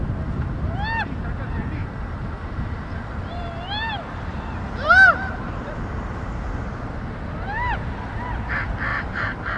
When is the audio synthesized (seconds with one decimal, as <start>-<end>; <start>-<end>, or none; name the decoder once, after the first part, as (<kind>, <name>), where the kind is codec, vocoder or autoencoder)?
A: 1.8-5.6 (vocoder, BigVGAN v2); 8.9-9.6